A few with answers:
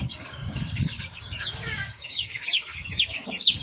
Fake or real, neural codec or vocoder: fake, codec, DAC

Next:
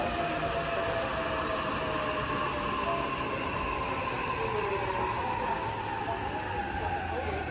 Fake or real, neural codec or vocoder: real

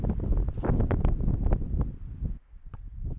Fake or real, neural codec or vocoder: real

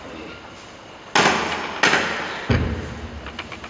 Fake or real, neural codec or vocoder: real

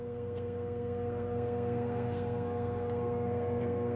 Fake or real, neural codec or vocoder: fake, codec, SNAC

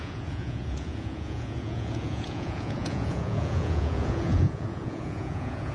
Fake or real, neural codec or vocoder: fake, vocoder, Vocos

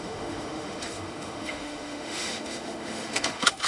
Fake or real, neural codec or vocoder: fake, autoencoder, DAC-VAE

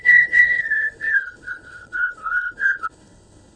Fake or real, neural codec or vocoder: fake, codec, HILCodec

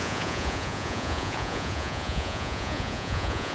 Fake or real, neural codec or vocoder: fake, vocoder, Vocos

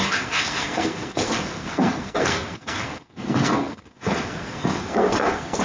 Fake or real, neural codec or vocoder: fake, codec, SNAC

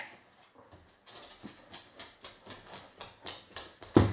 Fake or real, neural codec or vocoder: real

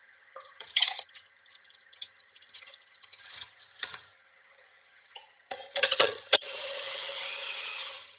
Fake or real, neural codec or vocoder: fake, vocoder, HiFi-GAN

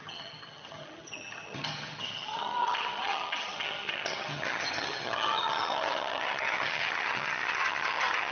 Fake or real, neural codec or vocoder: fake, vocoder, HiFi-GAN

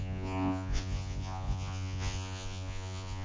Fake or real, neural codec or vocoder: fake, vocoder, Vocos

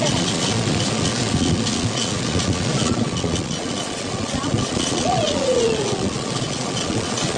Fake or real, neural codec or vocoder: fake, vocoder, Vocos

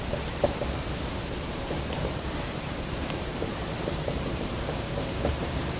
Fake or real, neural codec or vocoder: fake, vocoder, BigVGAN v2